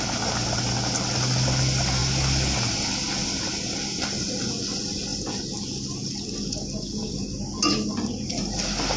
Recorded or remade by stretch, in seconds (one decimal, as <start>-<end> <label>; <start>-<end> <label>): 0.0-9.0 recorded